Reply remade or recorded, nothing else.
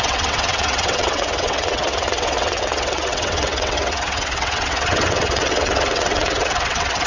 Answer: remade